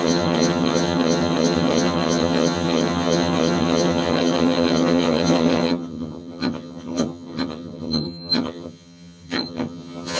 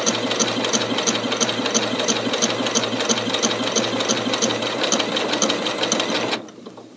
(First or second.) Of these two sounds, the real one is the second